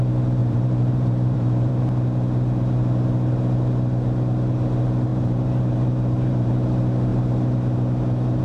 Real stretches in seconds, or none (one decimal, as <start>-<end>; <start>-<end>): 0.0-0.4; 1.7-5.1; 6.5-8.4